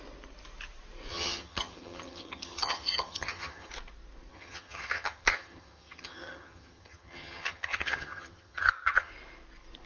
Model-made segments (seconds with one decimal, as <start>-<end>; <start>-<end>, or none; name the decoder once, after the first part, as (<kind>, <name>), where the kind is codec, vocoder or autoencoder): 1.1-3.7 (vocoder, HiFi-GAN); 4.3-9.1